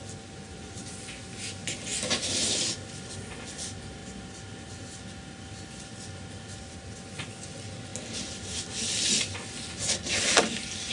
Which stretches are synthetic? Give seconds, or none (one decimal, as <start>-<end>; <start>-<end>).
none